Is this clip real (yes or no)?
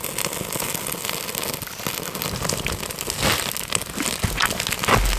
yes